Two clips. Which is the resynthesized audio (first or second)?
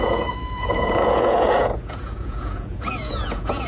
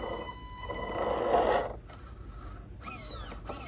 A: first